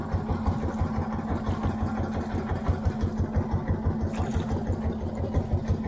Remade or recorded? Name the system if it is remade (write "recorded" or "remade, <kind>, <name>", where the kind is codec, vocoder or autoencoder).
recorded